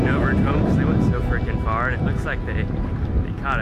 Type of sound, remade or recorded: recorded